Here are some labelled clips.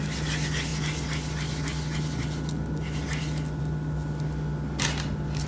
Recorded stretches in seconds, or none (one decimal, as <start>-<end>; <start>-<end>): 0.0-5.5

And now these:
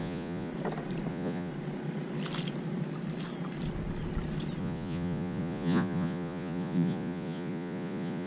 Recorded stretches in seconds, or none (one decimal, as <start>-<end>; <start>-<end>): 0.5-1.1; 1.5-4.6

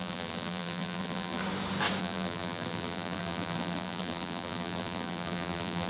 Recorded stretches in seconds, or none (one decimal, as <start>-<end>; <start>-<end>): 1.4-2.0